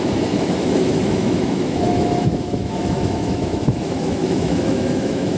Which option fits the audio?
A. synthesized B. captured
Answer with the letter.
A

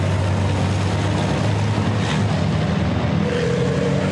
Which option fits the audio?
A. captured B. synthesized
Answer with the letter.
A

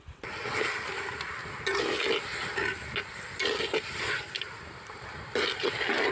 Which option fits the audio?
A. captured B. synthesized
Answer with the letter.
A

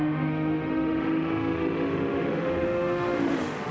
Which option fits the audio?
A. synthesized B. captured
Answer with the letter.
A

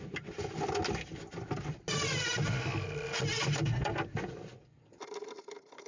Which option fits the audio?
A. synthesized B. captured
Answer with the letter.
B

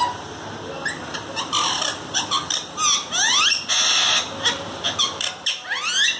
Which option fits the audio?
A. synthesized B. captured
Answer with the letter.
B